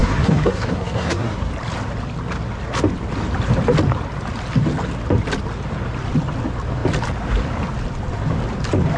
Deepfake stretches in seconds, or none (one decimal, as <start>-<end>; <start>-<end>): 0.0-1.5